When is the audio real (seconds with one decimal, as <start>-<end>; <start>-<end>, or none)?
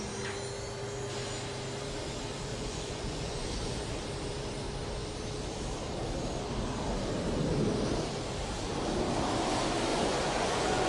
0.0-2.5; 3.8-9.9